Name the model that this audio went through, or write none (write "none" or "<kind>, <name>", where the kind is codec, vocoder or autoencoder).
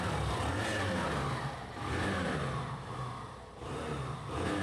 none